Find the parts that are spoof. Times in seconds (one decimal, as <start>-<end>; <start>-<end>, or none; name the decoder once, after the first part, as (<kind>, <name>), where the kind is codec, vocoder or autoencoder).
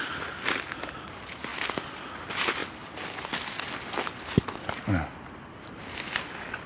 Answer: none